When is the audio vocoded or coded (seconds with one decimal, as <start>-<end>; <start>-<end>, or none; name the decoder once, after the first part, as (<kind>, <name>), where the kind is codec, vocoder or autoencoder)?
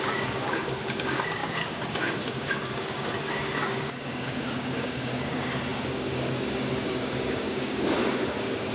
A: 0.0-8.7 (codec, DAC)